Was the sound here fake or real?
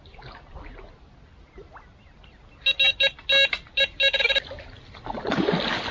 real